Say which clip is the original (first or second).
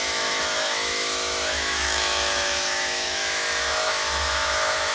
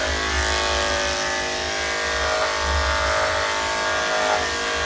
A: second